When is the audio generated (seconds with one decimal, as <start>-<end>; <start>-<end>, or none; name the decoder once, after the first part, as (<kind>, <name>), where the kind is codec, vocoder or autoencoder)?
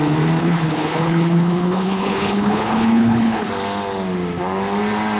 0.4-3.5 (codec, HILCodec)